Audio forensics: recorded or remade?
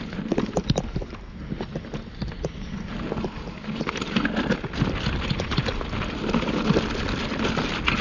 recorded